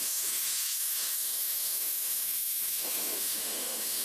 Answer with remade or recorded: remade